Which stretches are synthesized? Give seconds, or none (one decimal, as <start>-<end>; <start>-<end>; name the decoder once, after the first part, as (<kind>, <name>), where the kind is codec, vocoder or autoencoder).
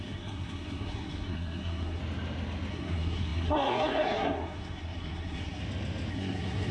0.0-2.0 (codec, SNAC); 2.7-5.6; 6.1-6.7